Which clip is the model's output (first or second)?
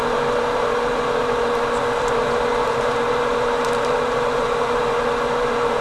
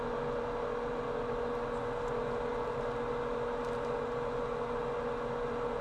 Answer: first